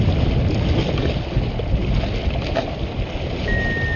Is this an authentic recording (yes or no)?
yes